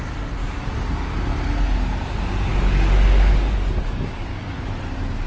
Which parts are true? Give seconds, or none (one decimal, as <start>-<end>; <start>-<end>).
0.0-0.4; 1.1-2.5; 4.6-5.3